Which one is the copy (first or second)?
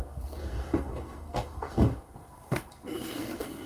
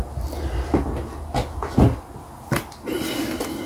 first